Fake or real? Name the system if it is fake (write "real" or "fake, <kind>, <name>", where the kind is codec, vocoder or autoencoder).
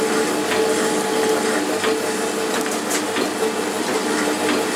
real